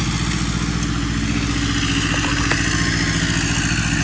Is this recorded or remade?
recorded